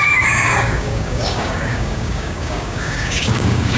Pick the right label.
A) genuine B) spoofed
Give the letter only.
B